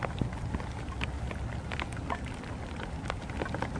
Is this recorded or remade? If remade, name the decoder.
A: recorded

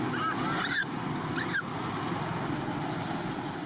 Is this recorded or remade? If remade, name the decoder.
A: recorded